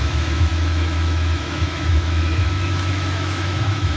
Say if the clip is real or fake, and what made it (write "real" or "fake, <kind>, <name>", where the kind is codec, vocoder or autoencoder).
fake, autoencoder, DAC-VAE